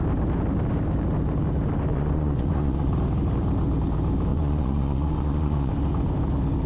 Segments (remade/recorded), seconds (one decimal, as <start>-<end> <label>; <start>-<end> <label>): 0.0-1.9 recorded; 1.9-2.9 remade; 2.9-4.3 recorded; 4.3-5.7 remade; 5.7-6.7 recorded